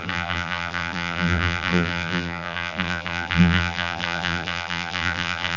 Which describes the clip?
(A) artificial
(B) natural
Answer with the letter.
A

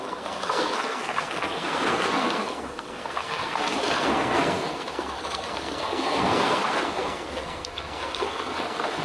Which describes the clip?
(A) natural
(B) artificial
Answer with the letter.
B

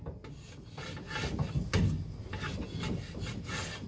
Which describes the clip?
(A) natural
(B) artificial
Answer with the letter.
A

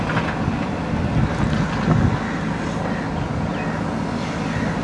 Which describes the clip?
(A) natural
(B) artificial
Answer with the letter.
A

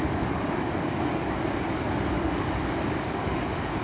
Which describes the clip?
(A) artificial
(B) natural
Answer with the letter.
A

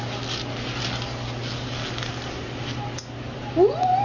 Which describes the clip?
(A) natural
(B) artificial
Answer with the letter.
A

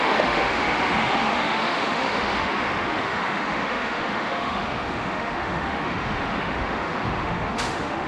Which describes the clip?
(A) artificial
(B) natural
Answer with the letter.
A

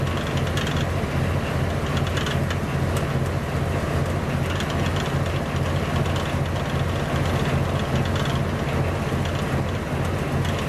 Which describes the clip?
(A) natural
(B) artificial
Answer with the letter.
A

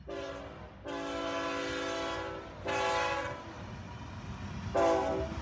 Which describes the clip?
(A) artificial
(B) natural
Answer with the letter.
B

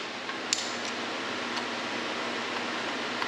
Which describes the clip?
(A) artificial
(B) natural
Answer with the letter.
B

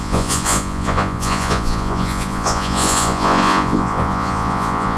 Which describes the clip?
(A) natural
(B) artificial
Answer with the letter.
B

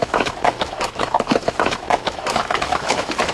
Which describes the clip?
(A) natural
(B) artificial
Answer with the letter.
B